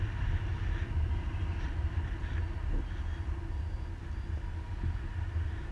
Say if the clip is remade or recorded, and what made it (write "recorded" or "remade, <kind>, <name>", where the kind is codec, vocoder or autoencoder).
recorded